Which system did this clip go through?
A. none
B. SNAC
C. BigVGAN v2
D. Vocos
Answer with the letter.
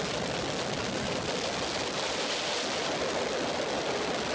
A